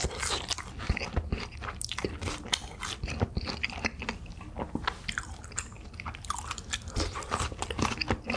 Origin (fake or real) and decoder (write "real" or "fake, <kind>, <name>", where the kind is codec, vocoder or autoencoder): real